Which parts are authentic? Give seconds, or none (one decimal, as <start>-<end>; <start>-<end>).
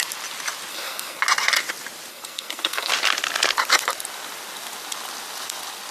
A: 0.0-0.7; 1.2-2.1; 2.9-5.9